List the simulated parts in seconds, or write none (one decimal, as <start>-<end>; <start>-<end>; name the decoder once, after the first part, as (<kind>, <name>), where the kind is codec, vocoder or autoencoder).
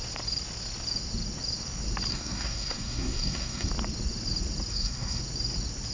2.1-3.7 (codec, SNAC); 4.7-5.2